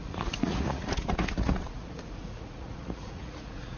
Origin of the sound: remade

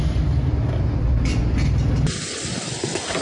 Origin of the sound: recorded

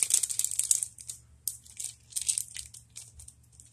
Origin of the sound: recorded